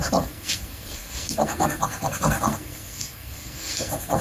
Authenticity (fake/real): fake